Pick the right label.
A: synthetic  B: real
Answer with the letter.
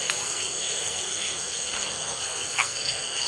A